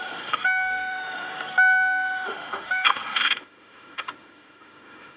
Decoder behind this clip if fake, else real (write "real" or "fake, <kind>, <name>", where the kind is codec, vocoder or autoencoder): fake, autoencoder, DAC-VAE